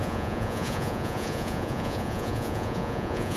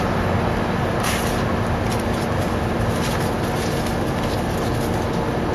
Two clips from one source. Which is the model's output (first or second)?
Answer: first